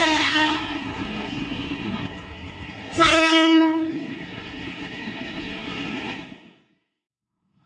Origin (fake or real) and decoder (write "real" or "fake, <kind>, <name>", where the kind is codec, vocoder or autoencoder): fake, codec, SNAC